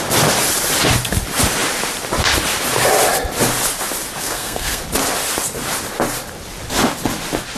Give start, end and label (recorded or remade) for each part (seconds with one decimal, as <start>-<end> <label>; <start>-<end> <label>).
0.0-4.2 recorded; 4.2-4.8 remade; 4.8-7.6 recorded